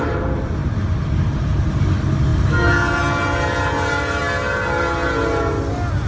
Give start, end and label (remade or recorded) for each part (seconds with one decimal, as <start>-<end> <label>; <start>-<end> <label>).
0.0-6.1 recorded